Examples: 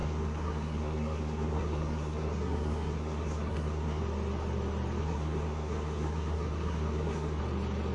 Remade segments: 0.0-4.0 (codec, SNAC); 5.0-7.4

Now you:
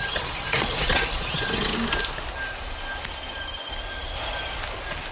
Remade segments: 0.0-1.7 (vocoder, Vocos)

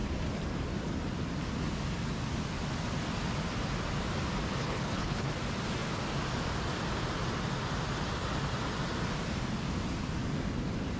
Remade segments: 4.6-5.3 (codec, HILCodec)

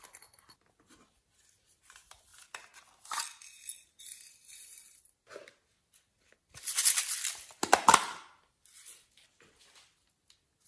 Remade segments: none

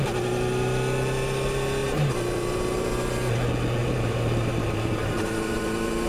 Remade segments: 1.8-2.9 (vocoder, BigVGAN v2); 3.8-6.1

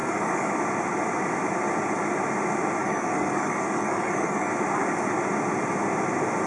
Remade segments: 0.0-0.5 (codec, DAC); 2.8-4.5

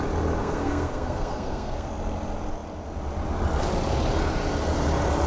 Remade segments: 0.4-1.9 (codec, SNAC)

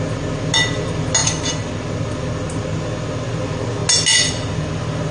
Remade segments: none